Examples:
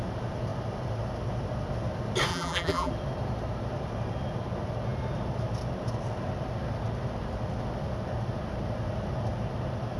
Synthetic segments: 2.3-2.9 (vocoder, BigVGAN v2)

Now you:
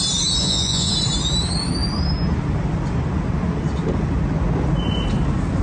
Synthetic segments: 0.4-0.9 (vocoder, Vocos)